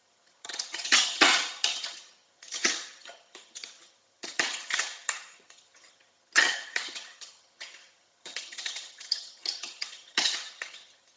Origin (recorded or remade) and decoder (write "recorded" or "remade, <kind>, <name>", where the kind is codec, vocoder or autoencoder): remade, vocoder, HiFi-GAN